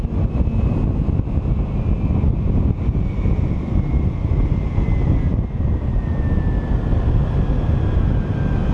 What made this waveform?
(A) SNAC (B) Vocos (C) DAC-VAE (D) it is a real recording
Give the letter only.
D